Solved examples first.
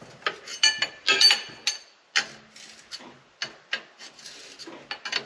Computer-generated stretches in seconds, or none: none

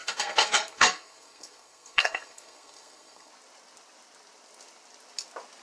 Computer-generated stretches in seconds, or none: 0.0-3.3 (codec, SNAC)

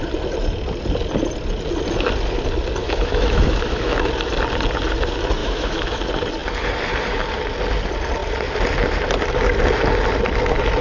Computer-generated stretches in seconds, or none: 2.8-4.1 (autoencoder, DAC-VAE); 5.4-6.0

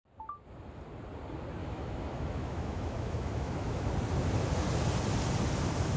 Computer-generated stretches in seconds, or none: 1.6-3.9 (autoencoder, DAC-VAE)

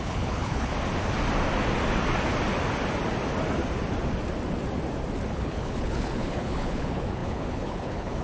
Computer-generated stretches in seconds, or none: 0.0-0.7 (codec, HILCodec); 5.3-8.2

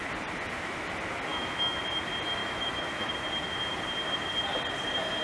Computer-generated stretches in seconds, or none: 1.3-1.8 (autoencoder, DAC-VAE); 2.4-3.1

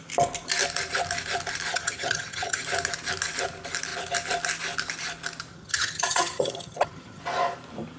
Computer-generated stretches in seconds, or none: 1.7-2.6 (vocoder, HiFi-GAN); 5.5-7.2

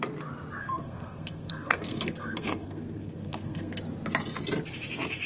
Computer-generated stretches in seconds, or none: 0.6-3.8 (codec, SNAC)